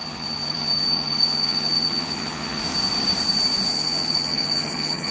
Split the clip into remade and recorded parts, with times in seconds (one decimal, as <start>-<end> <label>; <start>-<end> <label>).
0.0-2.6 remade; 2.6-3.7 recorded; 3.7-5.1 remade